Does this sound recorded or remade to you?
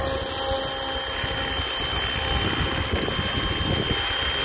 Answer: recorded